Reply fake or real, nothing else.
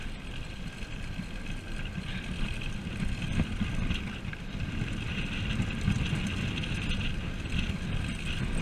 real